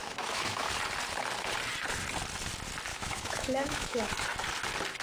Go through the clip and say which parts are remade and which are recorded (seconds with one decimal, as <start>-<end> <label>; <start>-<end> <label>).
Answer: 0.0-0.7 remade; 0.7-2.9 recorded; 2.9-4.1 remade; 4.1-5.0 recorded

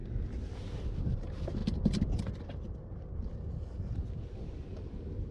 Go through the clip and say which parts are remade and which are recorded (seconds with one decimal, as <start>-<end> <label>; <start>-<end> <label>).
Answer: 0.0-5.3 recorded